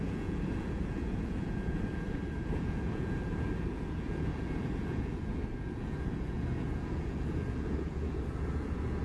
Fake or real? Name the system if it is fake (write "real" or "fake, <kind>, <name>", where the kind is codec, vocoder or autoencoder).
fake, vocoder, Vocos